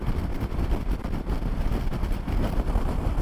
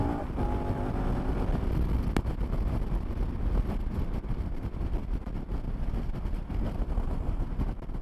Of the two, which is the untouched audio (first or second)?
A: second